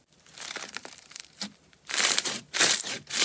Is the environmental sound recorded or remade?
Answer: remade